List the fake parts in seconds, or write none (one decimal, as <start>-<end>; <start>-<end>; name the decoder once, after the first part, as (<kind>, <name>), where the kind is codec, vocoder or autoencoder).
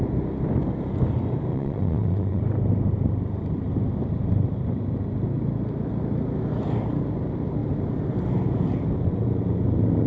1.5-2.4 (vocoder, Vocos)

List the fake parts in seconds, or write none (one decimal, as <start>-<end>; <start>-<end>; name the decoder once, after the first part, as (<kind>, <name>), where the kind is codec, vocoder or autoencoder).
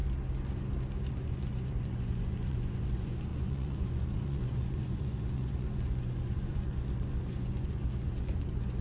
1.1-8.8 (vocoder, Vocos)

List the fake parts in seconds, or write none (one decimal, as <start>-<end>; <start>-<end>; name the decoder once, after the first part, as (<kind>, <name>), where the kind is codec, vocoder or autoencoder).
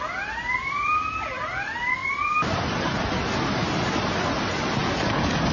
none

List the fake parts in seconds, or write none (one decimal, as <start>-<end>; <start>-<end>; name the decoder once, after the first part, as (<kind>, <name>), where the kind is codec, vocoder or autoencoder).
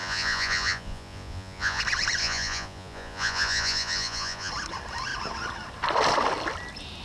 0.0-1.8 (vocoder, Vocos); 2.2-4.5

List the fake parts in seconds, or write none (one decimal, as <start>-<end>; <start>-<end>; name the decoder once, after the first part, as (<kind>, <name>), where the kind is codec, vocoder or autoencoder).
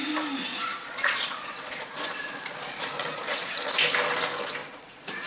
0.5-3.7 (vocoder, Vocos); 4.6-5.3